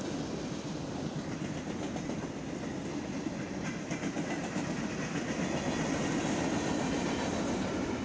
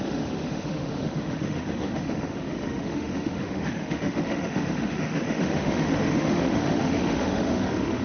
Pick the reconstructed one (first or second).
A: second